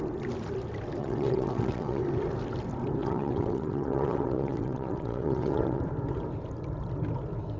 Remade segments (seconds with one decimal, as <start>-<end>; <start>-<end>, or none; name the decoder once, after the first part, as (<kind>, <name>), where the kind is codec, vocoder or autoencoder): 1.0-2.0 (vocoder, WaveNeXt); 3.0-5.8